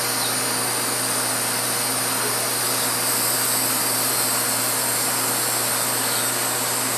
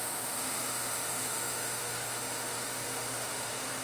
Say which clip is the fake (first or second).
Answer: second